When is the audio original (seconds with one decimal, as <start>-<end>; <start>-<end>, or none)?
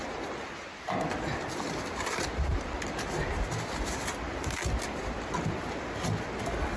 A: 0.0-6.8